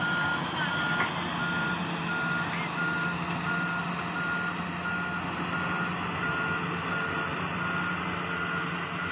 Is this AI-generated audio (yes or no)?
no